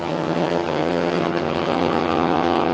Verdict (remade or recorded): remade